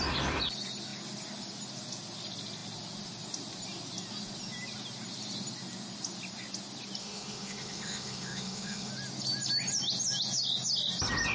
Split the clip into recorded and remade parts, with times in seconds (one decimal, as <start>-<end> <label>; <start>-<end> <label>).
0.0-7.0 recorded; 7.0-8.9 remade; 8.9-11.3 recorded